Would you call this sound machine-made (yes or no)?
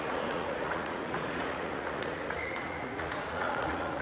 yes